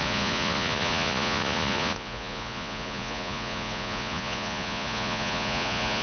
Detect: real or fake fake